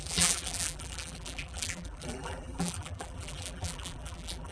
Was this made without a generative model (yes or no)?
no